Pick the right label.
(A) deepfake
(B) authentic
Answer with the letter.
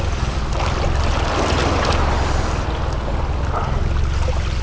B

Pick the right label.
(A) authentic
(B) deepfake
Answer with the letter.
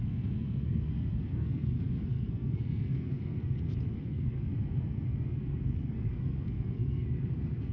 B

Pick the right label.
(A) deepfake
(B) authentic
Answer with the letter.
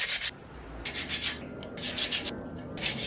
B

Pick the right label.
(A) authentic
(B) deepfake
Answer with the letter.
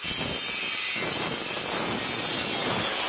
A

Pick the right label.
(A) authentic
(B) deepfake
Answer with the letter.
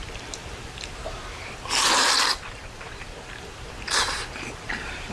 A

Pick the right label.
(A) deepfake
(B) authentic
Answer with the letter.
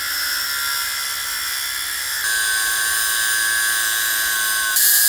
B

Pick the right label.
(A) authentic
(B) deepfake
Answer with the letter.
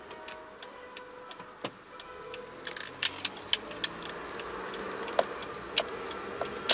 A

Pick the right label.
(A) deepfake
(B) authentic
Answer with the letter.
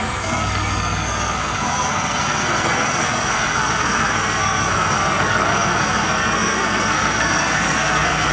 A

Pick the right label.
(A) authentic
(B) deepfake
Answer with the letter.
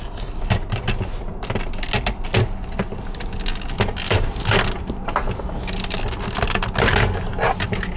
A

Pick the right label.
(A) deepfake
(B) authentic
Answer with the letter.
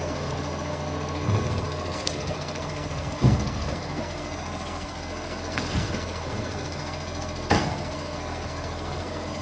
A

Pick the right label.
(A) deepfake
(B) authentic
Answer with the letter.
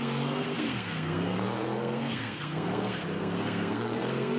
A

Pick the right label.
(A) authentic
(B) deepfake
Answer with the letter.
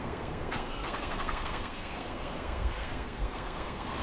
B